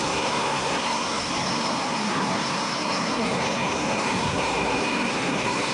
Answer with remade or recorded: remade